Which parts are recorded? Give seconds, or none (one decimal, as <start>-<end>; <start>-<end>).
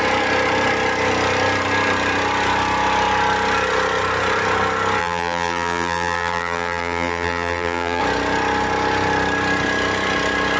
0.0-5.0; 8.0-10.6